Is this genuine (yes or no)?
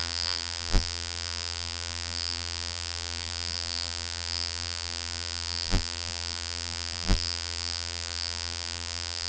no